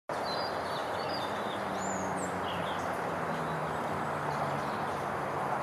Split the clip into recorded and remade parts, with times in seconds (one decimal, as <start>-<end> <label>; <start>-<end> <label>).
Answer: 0.0-5.6 recorded